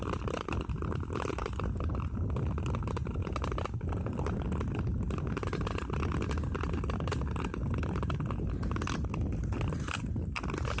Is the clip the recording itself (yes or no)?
yes